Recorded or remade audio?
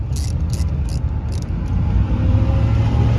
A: recorded